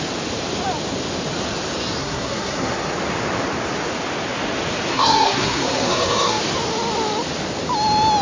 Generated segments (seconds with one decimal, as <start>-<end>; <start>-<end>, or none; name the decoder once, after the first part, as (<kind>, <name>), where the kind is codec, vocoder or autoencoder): 2.0-2.9 (codec, SNAC); 4.9-6.4